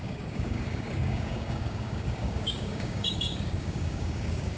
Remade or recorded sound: remade